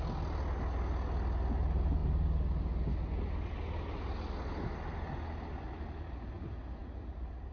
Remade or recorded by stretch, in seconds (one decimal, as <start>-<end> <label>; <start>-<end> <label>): 0.0-7.5 recorded